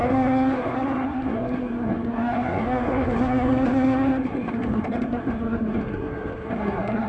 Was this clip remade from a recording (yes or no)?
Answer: yes